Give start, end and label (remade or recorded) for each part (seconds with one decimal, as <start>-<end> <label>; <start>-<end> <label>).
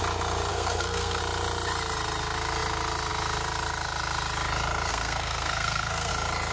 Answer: 0.0-0.5 recorded; 0.5-1.2 remade; 1.2-4.9 recorded; 4.9-6.1 remade; 6.1-6.5 recorded